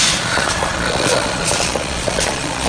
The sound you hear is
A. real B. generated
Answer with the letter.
B